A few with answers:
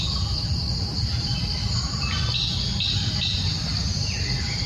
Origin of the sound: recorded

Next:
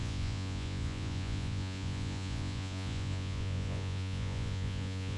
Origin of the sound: remade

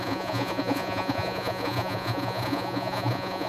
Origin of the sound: remade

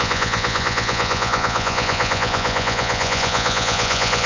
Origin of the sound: remade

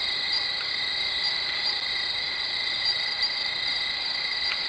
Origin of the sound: recorded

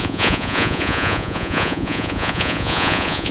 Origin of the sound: remade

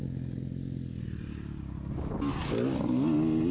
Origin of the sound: recorded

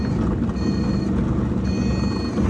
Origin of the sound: recorded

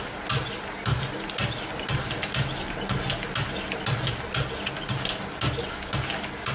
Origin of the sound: recorded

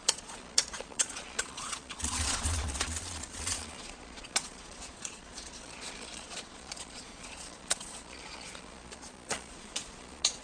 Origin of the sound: remade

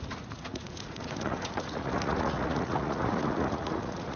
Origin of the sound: remade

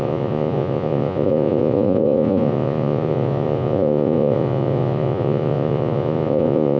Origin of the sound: remade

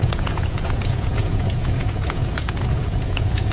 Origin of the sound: remade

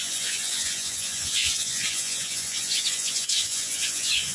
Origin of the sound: remade